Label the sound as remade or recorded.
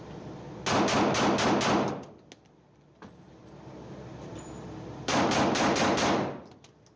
recorded